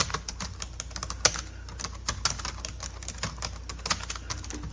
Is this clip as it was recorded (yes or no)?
yes